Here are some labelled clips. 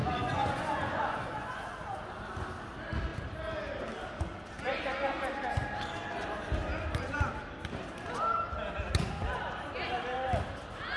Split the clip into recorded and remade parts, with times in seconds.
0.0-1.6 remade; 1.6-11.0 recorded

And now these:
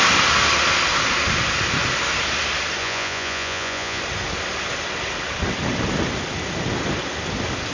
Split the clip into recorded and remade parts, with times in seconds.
0.0-2.8 recorded; 2.8-4.0 remade; 4.0-7.7 recorded

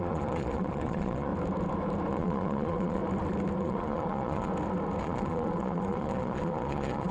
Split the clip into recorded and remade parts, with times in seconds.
0.0-1.3 remade; 1.3-2.1 recorded; 2.1-3.0 remade; 3.0-3.6 recorded; 3.6-4.5 remade; 4.5-5.0 recorded; 5.0-7.1 remade